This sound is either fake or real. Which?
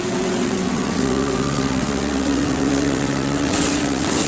fake